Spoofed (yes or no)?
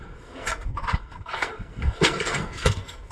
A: yes